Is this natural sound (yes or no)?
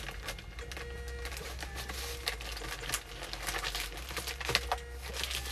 yes